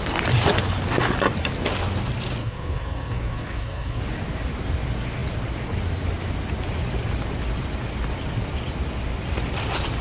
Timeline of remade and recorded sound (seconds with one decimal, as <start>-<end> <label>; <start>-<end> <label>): 0.0-2.4 recorded; 2.4-4.0 remade; 4.0-10.0 recorded